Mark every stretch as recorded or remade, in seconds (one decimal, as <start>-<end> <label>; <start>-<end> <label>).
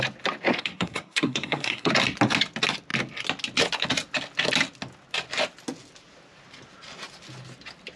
0.0-0.5 recorded; 0.5-1.9 remade; 1.9-8.0 recorded